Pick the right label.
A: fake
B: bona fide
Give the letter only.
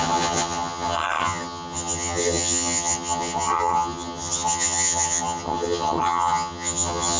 A